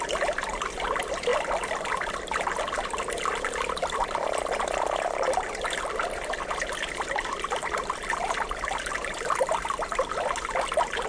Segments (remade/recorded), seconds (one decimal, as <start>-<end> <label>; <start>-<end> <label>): 0.0-11.1 recorded